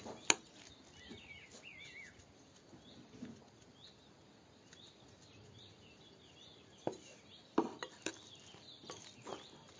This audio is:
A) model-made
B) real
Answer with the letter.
B